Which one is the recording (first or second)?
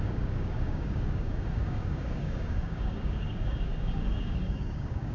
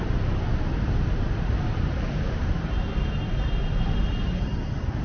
second